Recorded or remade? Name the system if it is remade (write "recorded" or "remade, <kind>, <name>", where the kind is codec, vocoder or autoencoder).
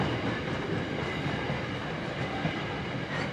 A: recorded